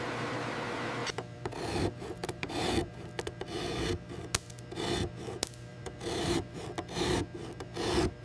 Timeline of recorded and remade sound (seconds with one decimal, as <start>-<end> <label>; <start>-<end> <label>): 0.0-1.0 recorded; 1.0-2.5 remade; 2.5-5.7 recorded; 5.7-6.6 remade; 6.6-8.2 recorded